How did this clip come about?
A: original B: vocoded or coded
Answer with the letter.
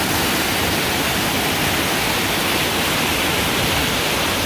A